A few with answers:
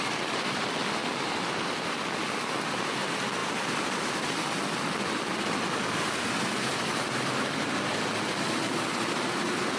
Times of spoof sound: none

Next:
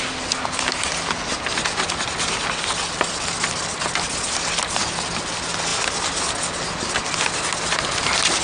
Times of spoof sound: none

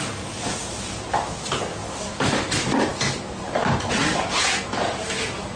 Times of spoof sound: 1.7-2.3 (codec, DAC)

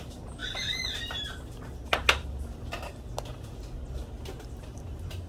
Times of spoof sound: none

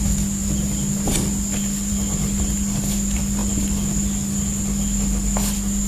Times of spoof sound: none

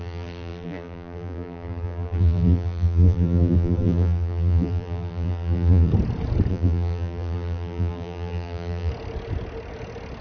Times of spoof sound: 0.0-5.9 (vocoder, BigVGAN v2); 6.5-8.9